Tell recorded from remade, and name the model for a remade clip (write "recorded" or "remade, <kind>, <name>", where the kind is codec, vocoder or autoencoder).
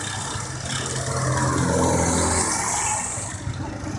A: recorded